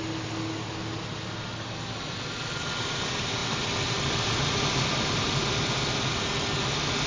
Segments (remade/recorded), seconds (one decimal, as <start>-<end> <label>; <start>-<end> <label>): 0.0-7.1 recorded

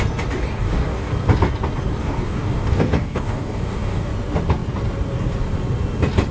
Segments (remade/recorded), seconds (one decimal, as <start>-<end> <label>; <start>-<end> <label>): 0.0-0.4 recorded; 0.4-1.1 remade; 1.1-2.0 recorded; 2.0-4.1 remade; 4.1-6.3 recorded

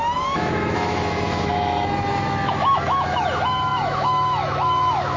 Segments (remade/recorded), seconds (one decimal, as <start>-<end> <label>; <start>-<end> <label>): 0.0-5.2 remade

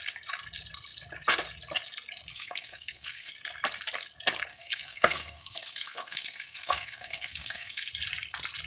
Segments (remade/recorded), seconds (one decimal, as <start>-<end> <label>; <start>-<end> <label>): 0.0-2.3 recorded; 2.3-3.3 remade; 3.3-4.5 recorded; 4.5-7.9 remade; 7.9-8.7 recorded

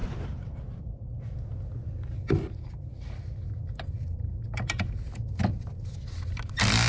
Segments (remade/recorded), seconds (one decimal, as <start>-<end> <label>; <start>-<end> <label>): 0.0-6.9 recorded